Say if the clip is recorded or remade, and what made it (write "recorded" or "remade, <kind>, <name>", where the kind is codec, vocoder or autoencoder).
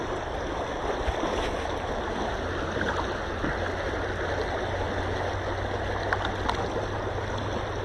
recorded